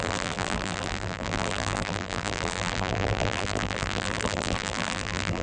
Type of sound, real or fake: fake